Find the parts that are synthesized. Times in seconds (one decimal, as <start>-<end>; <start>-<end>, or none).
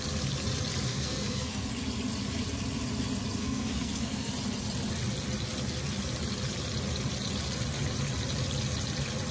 0.9-1.7; 3.4-4.3